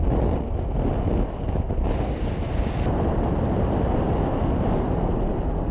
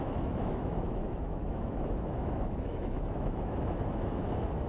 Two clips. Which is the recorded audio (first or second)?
first